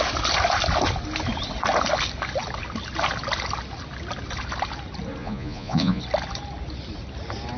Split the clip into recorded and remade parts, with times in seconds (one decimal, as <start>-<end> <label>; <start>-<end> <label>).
0.0-5.2 recorded; 5.2-6.0 remade; 6.0-7.6 recorded